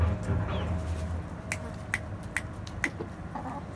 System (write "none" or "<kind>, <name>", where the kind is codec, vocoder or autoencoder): none